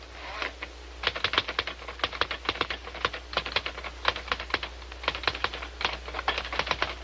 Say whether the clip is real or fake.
real